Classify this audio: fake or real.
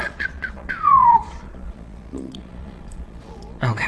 fake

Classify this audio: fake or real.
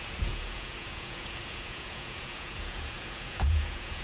fake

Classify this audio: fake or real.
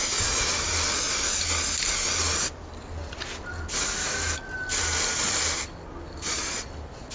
real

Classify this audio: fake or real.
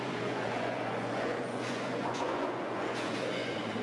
fake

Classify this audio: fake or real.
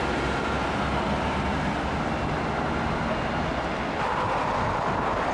real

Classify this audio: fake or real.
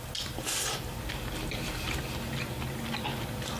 real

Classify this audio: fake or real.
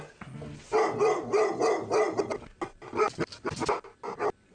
real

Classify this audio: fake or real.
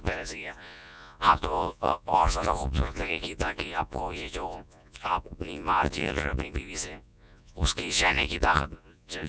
fake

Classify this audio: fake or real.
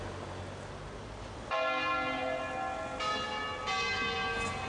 real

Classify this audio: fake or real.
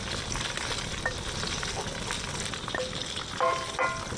real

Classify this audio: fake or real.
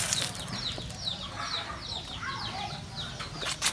real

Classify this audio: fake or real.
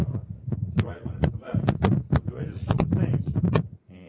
fake